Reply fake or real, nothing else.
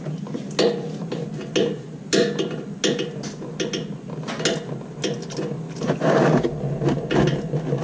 real